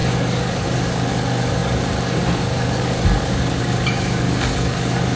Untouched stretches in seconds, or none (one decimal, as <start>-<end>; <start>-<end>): none